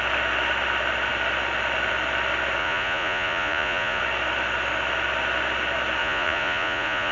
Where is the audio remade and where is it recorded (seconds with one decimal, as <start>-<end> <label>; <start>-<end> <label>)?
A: 0.0-2.6 recorded; 2.6-4.0 remade; 4.0-6.0 recorded; 6.0-7.1 remade